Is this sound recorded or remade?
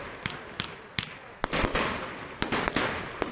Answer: recorded